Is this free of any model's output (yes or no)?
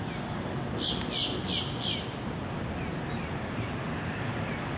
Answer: yes